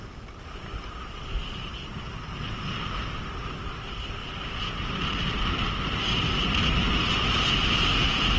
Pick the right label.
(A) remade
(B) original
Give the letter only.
B